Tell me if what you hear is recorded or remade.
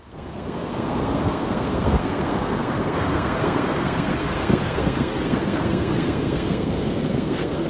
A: remade